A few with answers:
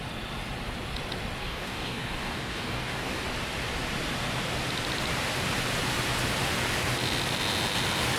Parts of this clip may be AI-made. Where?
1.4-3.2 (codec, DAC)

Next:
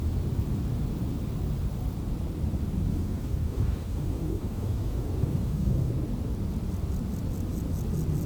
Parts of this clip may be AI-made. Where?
2.9-5.9 (codec, DAC)